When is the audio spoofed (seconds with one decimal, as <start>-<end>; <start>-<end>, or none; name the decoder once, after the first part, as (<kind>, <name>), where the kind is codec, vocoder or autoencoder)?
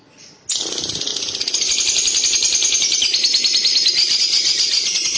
none